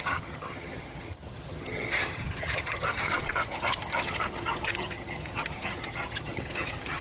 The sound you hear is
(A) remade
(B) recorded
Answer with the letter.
A